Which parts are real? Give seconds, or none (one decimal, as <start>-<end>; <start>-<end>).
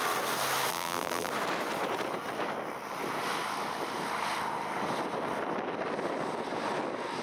0.0-0.7; 1.3-7.2